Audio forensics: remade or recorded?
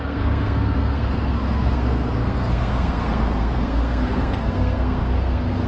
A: remade